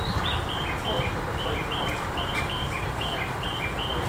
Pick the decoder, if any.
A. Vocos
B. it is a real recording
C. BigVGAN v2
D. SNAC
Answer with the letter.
C